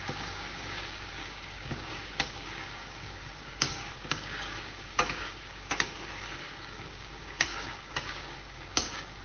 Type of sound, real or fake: fake